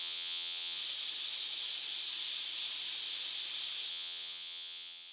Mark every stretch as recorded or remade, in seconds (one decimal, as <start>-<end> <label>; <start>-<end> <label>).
0.0-0.8 remade; 0.8-3.9 recorded; 3.9-5.1 remade